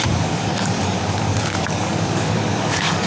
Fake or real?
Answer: fake